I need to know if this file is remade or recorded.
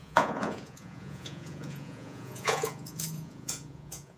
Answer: remade